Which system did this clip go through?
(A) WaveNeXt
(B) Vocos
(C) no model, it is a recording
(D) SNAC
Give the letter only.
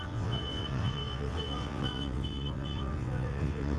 A